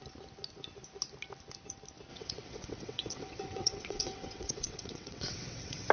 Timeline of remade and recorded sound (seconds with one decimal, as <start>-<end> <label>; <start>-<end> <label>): 0.0-2.1 recorded; 2.1-5.9 remade

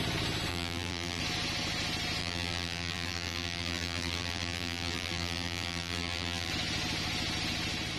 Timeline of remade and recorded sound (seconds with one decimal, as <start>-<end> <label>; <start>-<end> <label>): 0.0-0.5 recorded; 0.5-1.2 remade; 1.2-2.2 recorded; 2.2-6.5 remade; 6.5-8.0 recorded

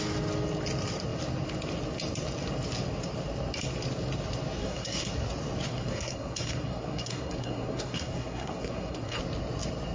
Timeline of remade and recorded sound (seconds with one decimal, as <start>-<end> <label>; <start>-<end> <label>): 0.0-4.6 recorded; 4.6-5.1 remade; 5.1-5.7 recorded; 5.7-9.2 remade; 9.2-9.9 recorded

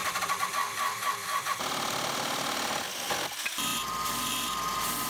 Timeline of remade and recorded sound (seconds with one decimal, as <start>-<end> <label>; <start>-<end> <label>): 0.0-5.1 recorded

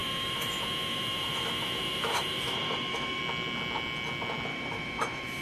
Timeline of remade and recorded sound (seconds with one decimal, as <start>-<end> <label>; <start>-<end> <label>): 0.0-3.2 remade; 3.2-4.5 recorded; 4.5-5.4 remade

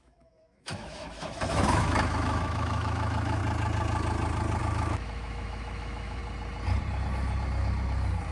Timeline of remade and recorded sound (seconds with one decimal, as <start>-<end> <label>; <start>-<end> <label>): 0.0-3.4 remade; 3.4-4.6 recorded; 4.6-6.2 remade; 6.2-8.3 recorded